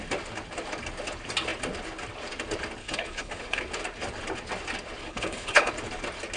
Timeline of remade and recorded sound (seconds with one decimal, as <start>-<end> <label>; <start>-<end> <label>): 0.0-2.8 recorded; 2.8-3.6 remade; 3.6-5.0 recorded; 5.0-5.7 remade; 5.7-6.4 recorded